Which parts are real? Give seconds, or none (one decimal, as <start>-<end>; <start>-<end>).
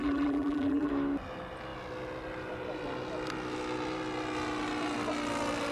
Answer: 0.9-5.7